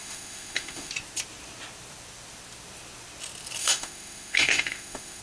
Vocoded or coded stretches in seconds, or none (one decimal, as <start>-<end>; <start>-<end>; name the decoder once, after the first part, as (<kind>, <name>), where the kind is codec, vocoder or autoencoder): 0.0-0.9 (autoencoder, DAC-VAE); 3.6-5.2